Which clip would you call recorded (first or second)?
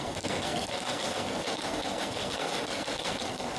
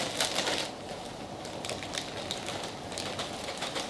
second